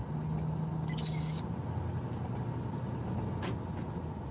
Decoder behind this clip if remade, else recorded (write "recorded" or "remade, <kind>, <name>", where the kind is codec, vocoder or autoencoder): recorded